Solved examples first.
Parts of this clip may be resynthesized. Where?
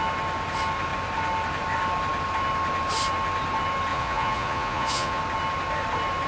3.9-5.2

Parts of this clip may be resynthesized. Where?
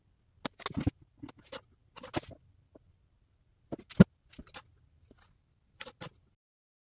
none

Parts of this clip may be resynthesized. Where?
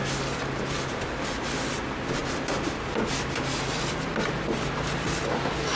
none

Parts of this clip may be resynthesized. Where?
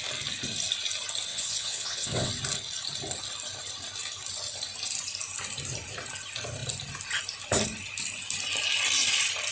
1.3-2.3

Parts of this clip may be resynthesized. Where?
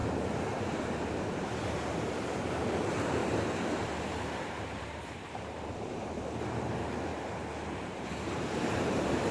2.4-3.2; 4.0-7.1; 7.7-9.3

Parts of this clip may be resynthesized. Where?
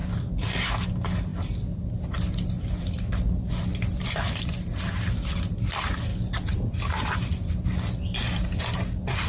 3.7-4.9